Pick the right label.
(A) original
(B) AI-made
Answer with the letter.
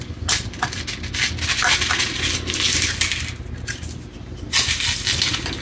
A